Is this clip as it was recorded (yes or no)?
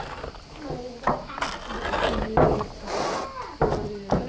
yes